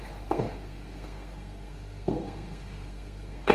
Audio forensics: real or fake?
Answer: fake